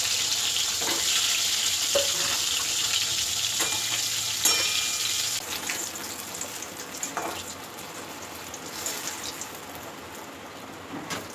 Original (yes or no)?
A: yes